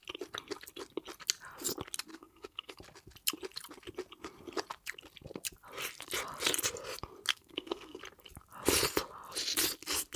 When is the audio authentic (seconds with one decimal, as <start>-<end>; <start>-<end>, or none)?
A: 0.0-2.1; 2.8-7.3; 8.0-10.2